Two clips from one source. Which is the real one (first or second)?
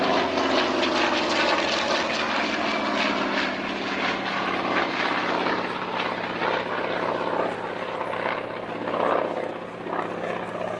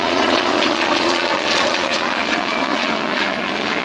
first